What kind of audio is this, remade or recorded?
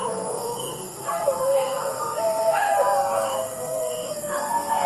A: remade